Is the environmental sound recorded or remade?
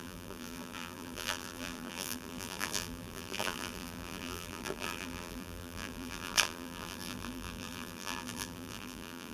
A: remade